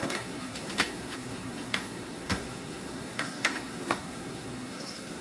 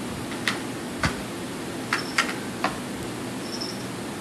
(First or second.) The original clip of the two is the second